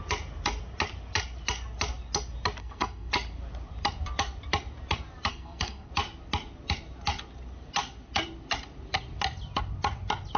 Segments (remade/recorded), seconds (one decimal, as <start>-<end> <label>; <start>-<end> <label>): 0.0-2.6 recorded; 2.6-3.1 remade; 3.1-5.3 recorded; 5.3-5.9 remade; 5.9-10.4 recorded